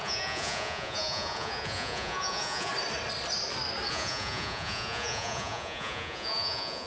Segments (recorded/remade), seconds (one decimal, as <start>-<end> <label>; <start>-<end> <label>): 0.0-2.7 remade; 2.7-3.9 recorded; 3.9-6.9 remade